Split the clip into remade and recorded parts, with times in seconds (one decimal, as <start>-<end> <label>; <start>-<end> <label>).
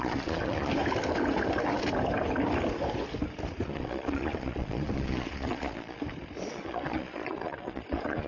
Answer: 0.0-0.7 remade; 0.7-3.6 recorded; 3.6-6.0 remade; 6.0-6.5 recorded; 6.5-8.3 remade